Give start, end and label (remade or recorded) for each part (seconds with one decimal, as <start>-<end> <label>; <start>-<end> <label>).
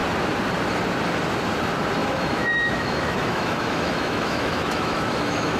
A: 0.0-2.0 recorded; 2.0-5.6 remade